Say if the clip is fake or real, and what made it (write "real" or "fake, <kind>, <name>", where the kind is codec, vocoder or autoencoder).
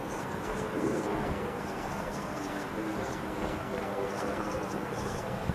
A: fake, codec, SNAC